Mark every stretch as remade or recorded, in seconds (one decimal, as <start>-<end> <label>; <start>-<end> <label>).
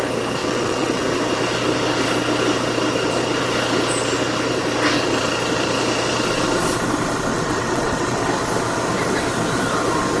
0.0-0.4 recorded; 0.4-1.0 remade; 1.0-7.3 recorded; 7.3-8.3 remade; 8.3-10.2 recorded